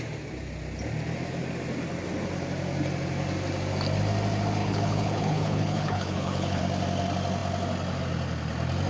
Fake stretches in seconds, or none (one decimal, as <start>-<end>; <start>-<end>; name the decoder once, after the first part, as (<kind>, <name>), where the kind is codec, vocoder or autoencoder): 4.6-6.6 (codec, HILCodec)